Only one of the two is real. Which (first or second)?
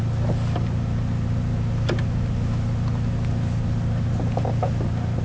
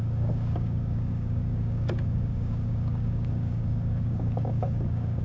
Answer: first